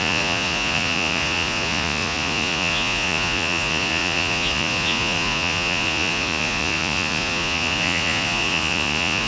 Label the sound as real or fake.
fake